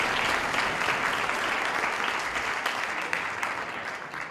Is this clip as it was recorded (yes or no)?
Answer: yes